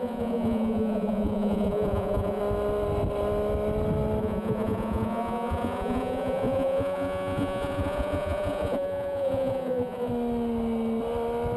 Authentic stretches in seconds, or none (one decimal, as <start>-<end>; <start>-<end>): 2.4-4.2; 10.1-11.6